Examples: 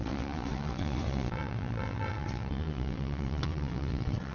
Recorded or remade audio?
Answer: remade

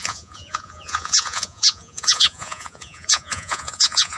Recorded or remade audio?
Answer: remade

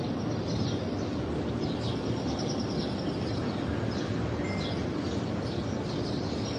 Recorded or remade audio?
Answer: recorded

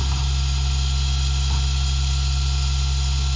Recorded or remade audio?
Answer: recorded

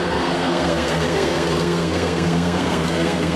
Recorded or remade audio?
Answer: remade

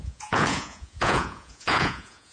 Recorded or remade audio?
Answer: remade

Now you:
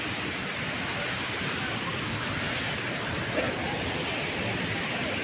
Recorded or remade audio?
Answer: recorded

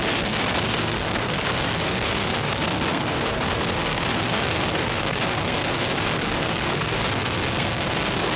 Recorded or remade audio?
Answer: remade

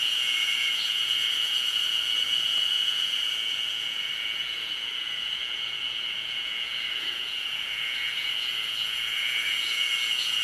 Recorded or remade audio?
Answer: remade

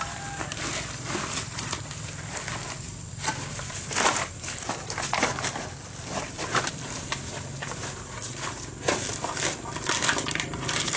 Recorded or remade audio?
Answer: remade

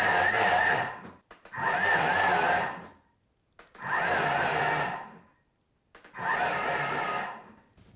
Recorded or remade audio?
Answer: recorded